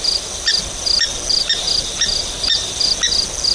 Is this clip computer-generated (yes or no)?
no